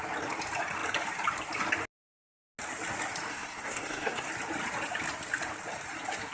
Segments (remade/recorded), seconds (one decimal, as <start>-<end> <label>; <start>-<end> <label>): 0.0-3.3 recorded; 3.3-4.3 remade; 4.3-6.3 recorded